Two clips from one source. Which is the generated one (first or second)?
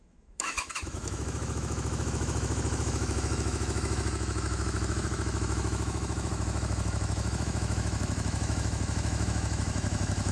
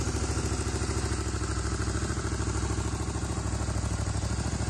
first